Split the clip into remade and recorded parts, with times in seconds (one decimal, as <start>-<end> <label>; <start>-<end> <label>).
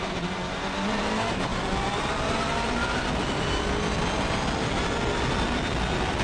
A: 0.0-6.2 recorded